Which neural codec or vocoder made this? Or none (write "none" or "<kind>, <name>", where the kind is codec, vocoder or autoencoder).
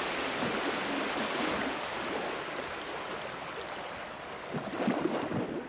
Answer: none